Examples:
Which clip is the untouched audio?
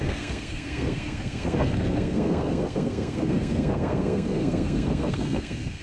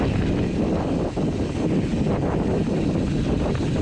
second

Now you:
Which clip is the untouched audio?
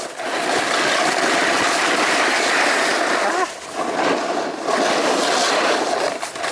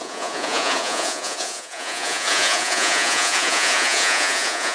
first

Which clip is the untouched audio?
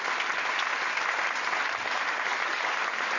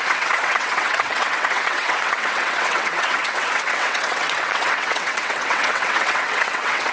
first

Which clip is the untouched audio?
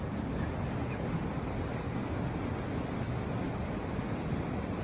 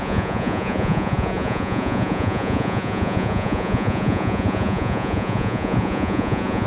first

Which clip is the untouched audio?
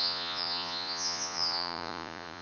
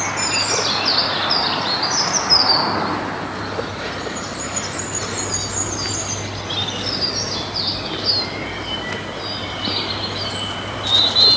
second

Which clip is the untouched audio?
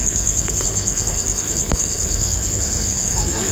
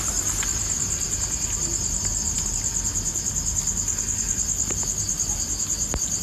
second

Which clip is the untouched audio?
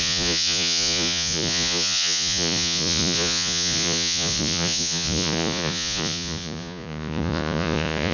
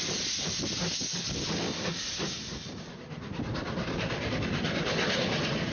second